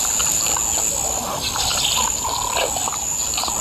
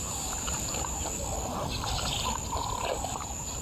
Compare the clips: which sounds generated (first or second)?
second